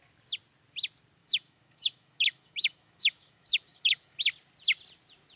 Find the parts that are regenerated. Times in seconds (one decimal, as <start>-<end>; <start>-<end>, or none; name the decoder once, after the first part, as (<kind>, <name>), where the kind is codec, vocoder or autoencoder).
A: 1.2-4.2 (autoencoder, DAC-VAE)